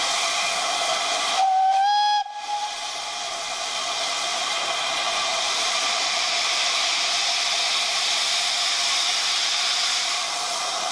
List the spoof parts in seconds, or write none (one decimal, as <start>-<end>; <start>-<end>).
2.2-7.1; 10.0-10.9